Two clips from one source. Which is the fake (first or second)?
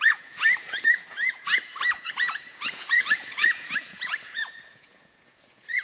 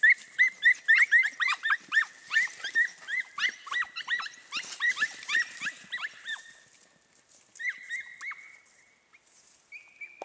first